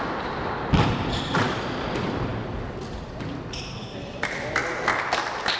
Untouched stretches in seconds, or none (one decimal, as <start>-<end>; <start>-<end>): 2.3-3.0; 4.6-5.6